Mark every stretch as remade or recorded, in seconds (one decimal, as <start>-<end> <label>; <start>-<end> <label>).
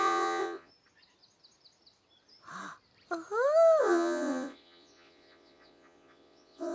0.0-0.7 remade; 0.7-3.8 recorded; 3.8-6.7 remade